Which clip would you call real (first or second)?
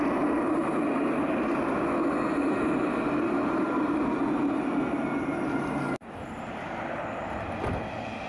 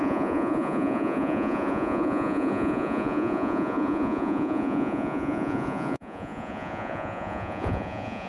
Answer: first